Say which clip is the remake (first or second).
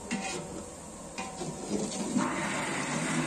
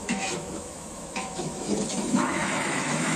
second